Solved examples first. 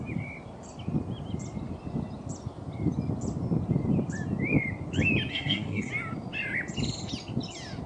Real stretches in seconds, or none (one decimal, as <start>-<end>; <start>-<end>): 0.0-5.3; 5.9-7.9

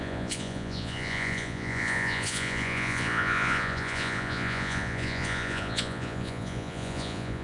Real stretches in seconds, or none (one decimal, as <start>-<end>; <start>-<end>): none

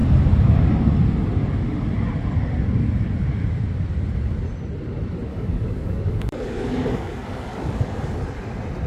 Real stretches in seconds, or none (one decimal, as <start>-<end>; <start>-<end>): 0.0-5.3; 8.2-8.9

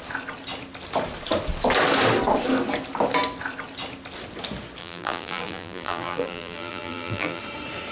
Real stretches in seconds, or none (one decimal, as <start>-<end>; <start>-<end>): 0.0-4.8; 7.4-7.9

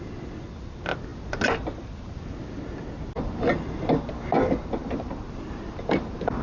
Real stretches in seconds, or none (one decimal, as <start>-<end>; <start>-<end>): 0.0-4.8

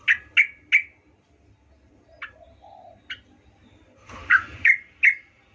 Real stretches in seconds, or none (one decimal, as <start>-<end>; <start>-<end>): 0.0-3.6; 4.7-5.5

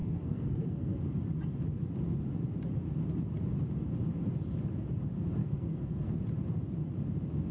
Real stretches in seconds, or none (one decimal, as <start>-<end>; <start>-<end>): 1.0-5.4; 6.2-7.5

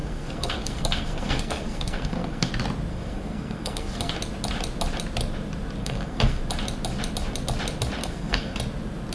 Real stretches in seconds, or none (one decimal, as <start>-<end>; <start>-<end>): 2.5-2.9; 4.1-5.8; 6.4-8.0; 8.6-9.1